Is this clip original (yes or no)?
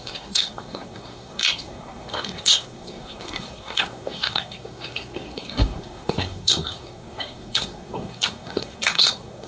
no